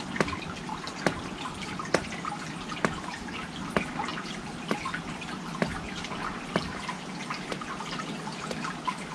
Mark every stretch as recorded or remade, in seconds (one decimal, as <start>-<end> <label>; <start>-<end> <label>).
0.0-9.1 recorded